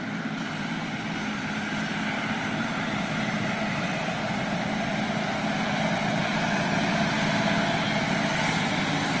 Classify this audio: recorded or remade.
remade